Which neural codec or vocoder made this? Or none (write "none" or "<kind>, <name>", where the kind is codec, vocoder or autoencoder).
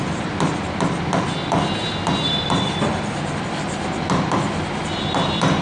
none